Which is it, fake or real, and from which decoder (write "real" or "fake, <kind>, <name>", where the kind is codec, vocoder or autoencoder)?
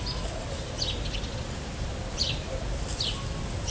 real